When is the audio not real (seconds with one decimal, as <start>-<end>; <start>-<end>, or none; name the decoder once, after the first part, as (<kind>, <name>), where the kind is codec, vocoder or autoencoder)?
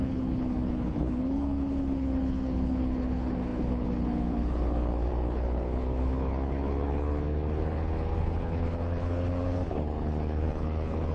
0.0-11.1 (codec, HILCodec)